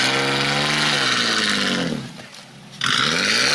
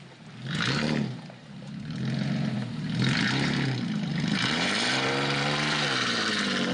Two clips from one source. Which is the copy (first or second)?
second